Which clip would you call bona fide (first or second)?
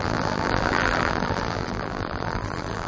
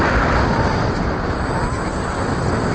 second